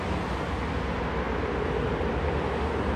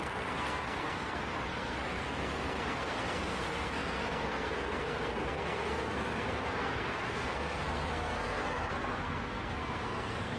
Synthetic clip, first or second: second